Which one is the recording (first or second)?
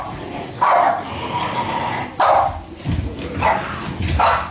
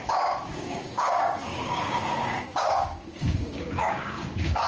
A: first